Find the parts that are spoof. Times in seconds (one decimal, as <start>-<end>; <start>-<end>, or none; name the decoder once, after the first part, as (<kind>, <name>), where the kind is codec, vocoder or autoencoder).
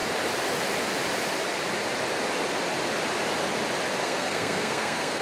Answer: 4.0-5.2 (codec, SNAC)